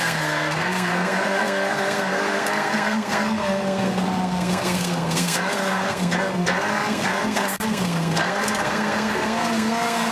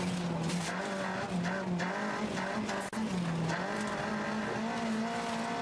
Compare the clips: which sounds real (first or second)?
second